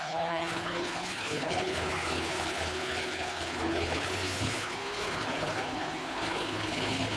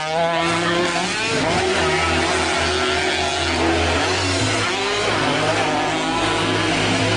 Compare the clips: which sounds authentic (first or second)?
second